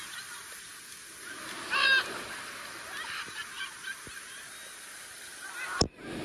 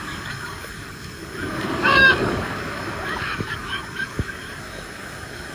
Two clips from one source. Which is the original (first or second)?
first